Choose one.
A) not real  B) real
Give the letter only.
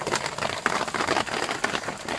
B